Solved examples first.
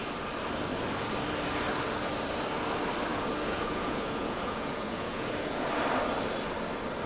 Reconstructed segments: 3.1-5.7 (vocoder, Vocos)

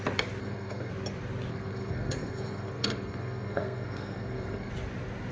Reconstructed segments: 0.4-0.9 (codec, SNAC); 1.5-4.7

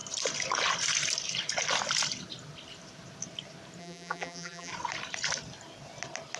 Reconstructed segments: 3.8-4.7 (vocoder, BigVGAN v2)

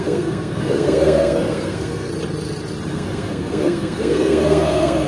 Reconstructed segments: 0.0-2.1 (codec, SNAC); 2.9-5.1

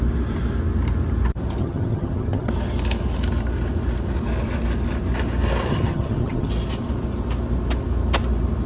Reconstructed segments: 1.6-2.5 (vocoder, HiFi-GAN); 5.7-6.5

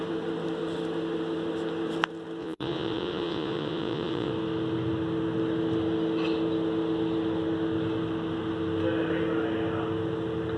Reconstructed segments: 2.4-4.3 (vocoder, Vocos)

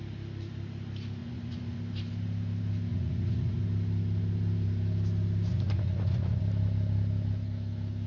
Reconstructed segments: 1.2-1.8 (vocoder, Vocos); 2.9-3.6; 5.5-6.4

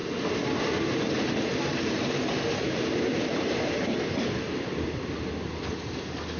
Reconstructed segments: none